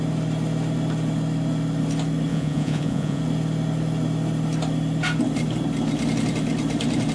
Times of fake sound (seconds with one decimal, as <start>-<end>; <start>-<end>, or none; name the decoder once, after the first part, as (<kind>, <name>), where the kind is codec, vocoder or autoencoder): 2.3-3.2 (vocoder, Vocos)

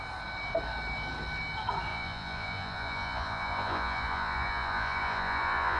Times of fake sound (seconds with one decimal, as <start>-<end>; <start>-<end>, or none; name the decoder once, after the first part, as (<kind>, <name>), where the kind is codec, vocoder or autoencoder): 1.9-5.8 (vocoder, Vocos)